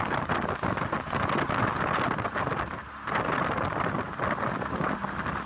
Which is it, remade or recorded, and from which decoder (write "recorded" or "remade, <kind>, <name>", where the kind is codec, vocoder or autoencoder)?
recorded